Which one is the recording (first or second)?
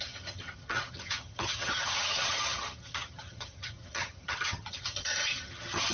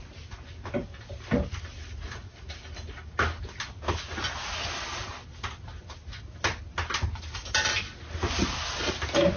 second